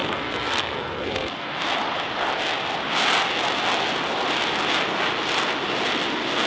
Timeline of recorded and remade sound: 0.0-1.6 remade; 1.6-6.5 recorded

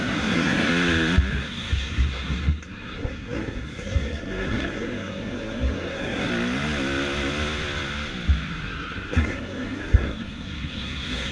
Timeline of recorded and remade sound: 0.0-0.7 remade; 0.7-1.3 recorded; 1.3-6.3 remade; 6.3-8.5 recorded; 8.5-11.3 remade

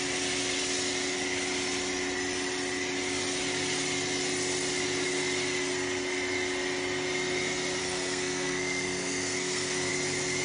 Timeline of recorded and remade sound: 0.0-7.8 recorded; 7.8-9.9 remade; 9.9-10.4 recorded

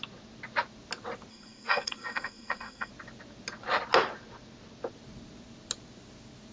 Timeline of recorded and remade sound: 0.0-1.3 recorded; 1.3-2.9 remade; 2.9-6.5 recorded

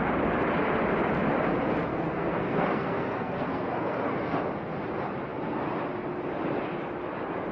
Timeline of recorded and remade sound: 0.0-1.9 recorded; 1.9-4.4 remade; 4.4-7.5 recorded

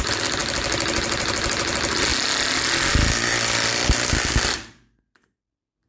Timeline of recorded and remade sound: 0.0-5.9 recorded

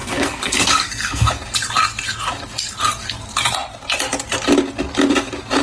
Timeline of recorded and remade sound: 0.0-1.3 remade; 1.3-5.6 recorded

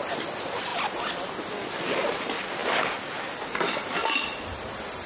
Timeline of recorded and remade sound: 0.0-5.1 recorded